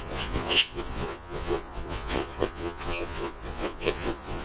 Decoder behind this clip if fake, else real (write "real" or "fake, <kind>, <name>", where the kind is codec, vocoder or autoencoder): fake, vocoder, Vocos